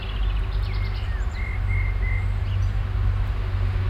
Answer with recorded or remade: recorded